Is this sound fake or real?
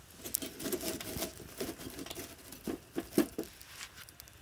real